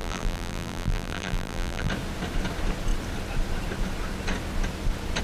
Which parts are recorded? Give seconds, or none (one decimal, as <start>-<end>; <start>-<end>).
1.9-5.2